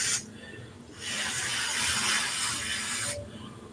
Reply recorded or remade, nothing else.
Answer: recorded